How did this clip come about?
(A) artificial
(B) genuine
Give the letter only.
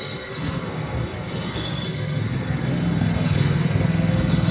A